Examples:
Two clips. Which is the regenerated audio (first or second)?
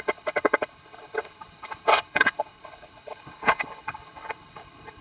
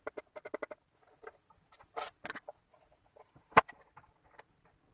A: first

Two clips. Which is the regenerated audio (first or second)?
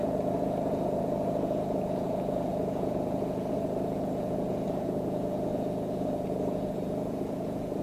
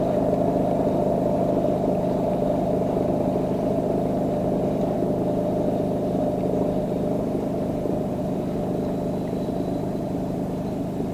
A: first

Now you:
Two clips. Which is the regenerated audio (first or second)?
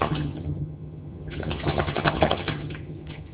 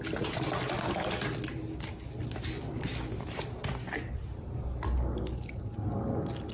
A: first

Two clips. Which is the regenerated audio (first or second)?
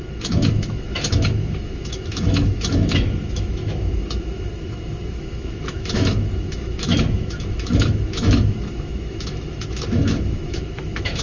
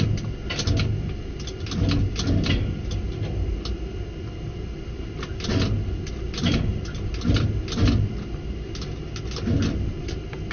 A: first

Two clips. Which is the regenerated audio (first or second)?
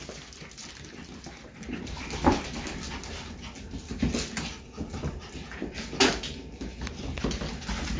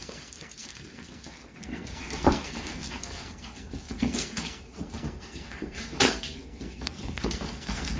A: second